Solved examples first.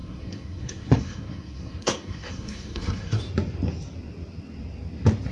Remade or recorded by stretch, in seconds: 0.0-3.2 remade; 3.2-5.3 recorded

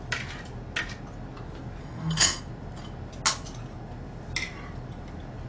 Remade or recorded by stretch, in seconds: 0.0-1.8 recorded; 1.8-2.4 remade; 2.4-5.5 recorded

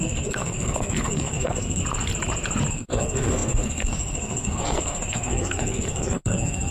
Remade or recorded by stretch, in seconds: 0.0-1.8 remade; 1.8-2.7 recorded; 2.7-6.7 remade

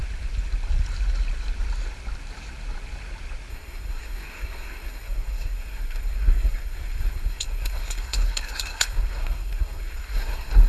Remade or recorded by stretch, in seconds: 0.0-3.5 recorded; 3.5-10.7 remade

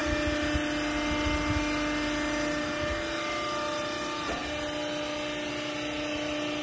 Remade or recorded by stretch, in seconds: 0.0-6.6 recorded